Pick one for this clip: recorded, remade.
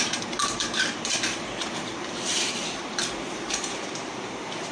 remade